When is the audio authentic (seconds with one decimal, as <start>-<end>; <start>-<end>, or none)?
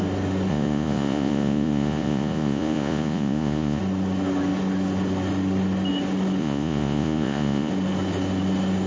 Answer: 0.0-0.5; 3.8-6.4; 7.7-8.9